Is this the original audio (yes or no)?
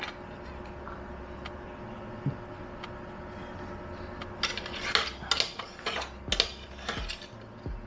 yes